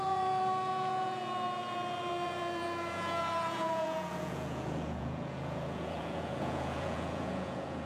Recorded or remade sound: remade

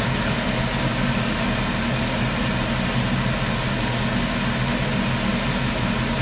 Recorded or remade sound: recorded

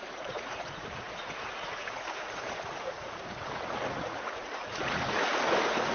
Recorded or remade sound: remade